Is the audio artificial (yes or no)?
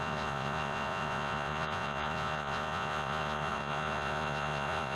yes